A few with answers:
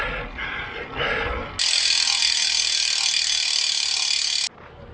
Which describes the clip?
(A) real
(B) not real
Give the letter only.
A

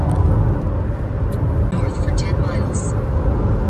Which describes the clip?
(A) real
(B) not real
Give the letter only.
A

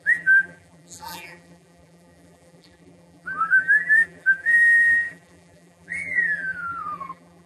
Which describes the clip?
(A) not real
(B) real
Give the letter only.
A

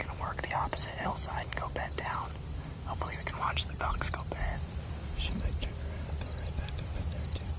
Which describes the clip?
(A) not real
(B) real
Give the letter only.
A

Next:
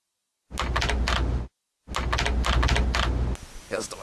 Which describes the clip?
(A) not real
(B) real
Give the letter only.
B